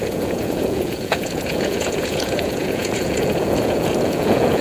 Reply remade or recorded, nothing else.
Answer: remade